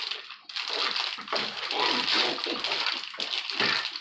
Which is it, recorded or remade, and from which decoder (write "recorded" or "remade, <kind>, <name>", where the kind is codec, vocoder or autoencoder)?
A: recorded